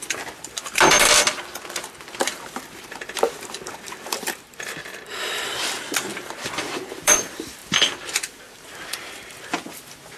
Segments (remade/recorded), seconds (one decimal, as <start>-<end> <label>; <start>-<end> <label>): 0.0-10.2 remade